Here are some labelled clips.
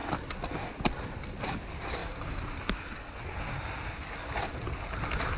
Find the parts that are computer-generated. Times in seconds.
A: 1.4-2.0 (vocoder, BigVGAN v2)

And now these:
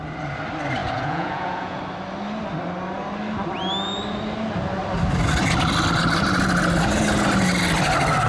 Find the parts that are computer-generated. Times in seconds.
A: 0.8-1.8 (vocoder, Vocos)

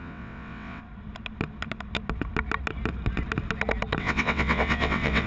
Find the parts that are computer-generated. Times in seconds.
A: 0.0-0.8 (vocoder, WaveNeXt); 4.0-5.3

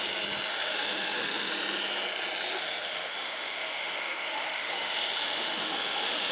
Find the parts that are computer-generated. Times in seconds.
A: 0.5-1.5 (autoencoder, DAC-VAE); 2.5-6.3

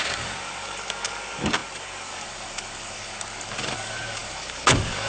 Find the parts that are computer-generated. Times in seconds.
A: 0.0-5.1 (codec, DAC)

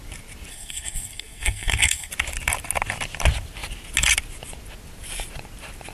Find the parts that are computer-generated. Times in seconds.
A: 0.5-2.1 (codec, SNAC)

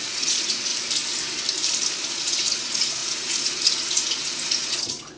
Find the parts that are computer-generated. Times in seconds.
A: 0.0-0.7 (vocoder, Vocos); 2.1-5.2